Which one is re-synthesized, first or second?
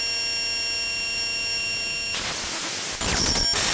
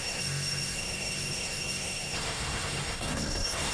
second